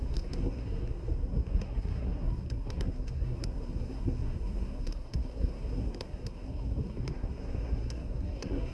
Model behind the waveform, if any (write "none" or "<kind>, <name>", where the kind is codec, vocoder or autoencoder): codec, SNAC